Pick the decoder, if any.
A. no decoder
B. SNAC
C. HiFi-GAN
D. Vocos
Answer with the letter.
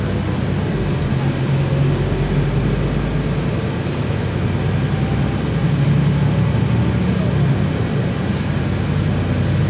A